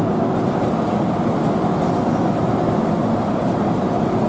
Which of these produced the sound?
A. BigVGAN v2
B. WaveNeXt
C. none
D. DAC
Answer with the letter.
C